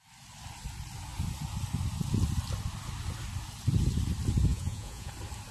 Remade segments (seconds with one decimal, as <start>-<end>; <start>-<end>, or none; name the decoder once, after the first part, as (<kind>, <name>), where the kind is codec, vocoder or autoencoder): 4.5-5.1 (vocoder, Vocos)